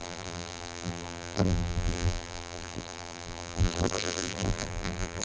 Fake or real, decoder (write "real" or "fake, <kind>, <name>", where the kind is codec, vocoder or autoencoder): fake, vocoder, BigVGAN v2